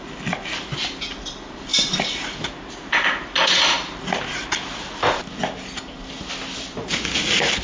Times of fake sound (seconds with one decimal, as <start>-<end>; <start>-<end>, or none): none